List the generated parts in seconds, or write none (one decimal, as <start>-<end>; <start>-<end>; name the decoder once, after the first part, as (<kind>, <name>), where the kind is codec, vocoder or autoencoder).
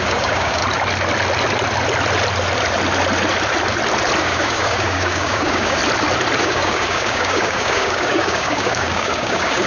0.0-0.6 (codec, DAC); 4.2-5.8; 6.4-9.7